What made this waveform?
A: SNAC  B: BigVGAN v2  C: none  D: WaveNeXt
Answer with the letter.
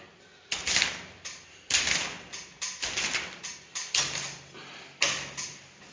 C